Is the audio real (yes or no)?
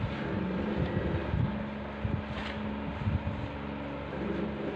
yes